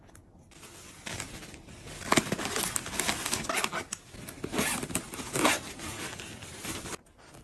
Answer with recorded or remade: recorded